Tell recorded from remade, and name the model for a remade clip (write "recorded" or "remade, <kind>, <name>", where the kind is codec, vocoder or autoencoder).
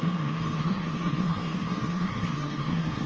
remade, codec, SNAC